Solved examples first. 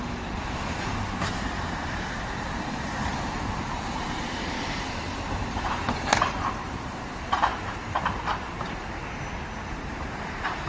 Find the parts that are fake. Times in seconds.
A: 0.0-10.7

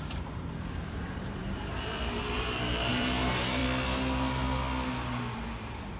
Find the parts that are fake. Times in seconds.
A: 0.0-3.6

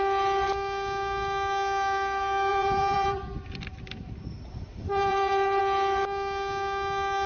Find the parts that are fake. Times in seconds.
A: 2.5-5.6